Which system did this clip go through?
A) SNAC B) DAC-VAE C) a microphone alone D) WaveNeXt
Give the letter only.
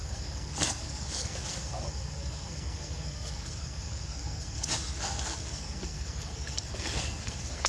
A